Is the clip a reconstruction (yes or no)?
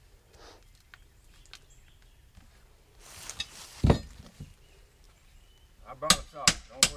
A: no